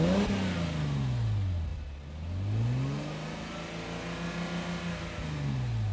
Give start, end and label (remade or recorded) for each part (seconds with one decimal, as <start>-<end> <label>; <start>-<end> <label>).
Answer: 0.0-5.9 recorded